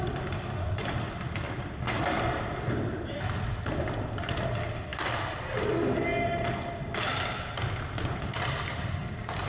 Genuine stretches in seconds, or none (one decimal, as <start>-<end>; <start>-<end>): 0.0-9.5

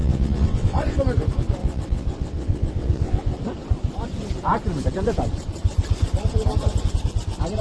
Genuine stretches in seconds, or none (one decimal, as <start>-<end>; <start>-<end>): 1.0-1.6; 3.4-7.6

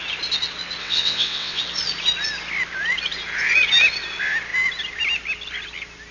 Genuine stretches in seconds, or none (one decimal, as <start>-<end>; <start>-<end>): 0.0-0.8; 1.6-6.1

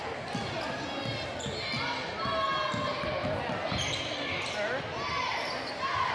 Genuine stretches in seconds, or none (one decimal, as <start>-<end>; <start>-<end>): 0.0-6.1

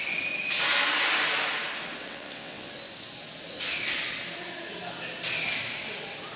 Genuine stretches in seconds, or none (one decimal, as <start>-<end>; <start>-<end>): 0.0-2.0; 2.7-6.4

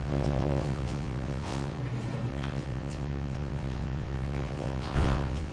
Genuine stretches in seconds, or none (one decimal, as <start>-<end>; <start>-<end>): 1.8-2.3

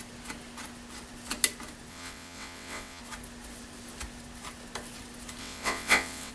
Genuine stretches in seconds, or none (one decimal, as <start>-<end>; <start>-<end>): 0.0-1.9; 3.0-5.4